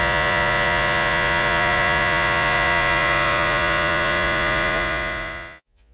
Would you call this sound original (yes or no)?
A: no